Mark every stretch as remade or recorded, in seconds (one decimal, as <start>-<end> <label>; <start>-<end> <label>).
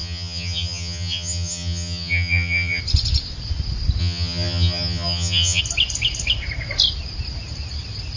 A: 0.0-2.8 remade; 2.8-4.0 recorded; 4.0-5.6 remade; 5.6-8.2 recorded